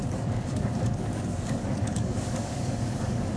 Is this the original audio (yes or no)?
no